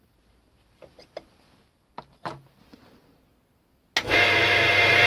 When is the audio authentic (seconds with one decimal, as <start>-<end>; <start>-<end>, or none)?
3.3-4.1

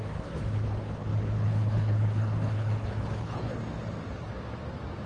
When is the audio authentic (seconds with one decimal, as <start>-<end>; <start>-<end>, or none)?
3.6-5.1